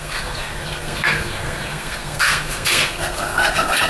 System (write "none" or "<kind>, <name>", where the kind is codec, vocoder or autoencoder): codec, SNAC